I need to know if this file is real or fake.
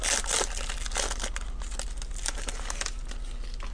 real